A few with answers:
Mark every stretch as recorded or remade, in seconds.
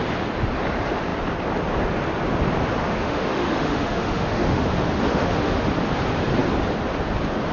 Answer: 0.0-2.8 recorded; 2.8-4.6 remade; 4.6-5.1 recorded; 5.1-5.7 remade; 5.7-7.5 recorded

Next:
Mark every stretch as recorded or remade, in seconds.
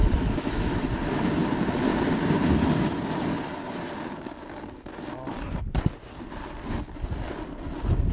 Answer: 0.0-0.7 remade; 0.7-8.1 recorded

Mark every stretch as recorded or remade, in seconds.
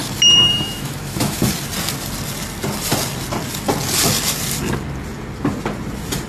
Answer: 0.0-0.4 recorded; 0.4-1.5 remade; 1.5-6.3 recorded